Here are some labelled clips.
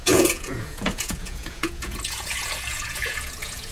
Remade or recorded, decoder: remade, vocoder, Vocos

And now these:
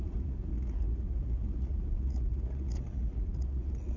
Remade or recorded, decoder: remade, vocoder, Vocos